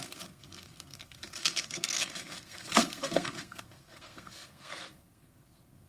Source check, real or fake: fake